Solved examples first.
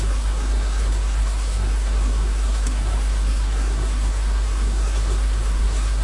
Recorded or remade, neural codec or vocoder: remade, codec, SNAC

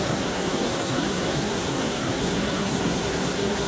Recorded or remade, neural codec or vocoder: remade, codec, SNAC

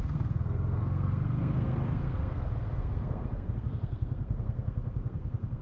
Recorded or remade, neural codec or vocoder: remade, codec, SNAC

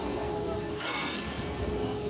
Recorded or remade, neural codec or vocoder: remade, codec, SNAC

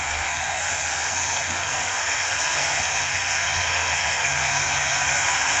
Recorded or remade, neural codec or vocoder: remade, codec, SNAC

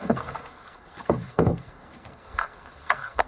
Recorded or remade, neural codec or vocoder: remade, codec, SNAC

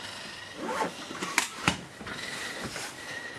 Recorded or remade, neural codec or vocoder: recorded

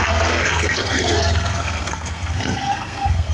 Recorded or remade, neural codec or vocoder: remade, codec, SNAC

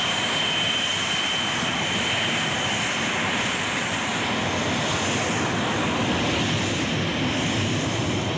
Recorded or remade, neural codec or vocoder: recorded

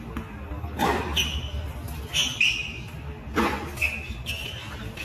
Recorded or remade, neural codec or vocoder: recorded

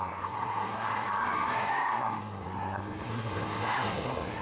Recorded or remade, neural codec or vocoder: remade, codec, SNAC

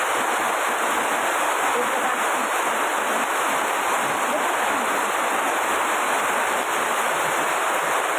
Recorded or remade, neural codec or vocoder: recorded